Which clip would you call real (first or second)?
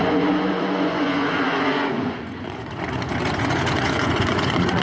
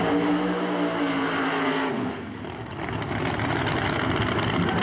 second